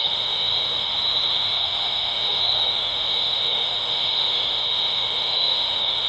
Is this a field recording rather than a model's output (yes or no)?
no